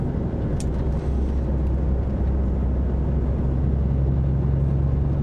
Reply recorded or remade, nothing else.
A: recorded